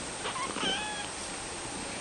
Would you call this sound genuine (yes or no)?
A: yes